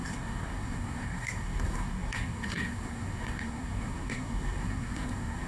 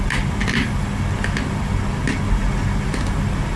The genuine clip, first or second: second